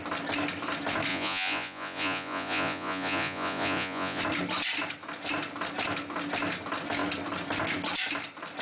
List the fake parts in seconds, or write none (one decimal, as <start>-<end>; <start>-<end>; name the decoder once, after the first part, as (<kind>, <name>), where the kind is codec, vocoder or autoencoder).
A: 1.1-4.2 (vocoder, Vocos)